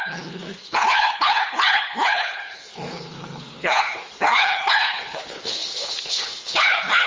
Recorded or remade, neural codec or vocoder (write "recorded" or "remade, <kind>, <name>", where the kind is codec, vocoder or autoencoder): remade, codec, HILCodec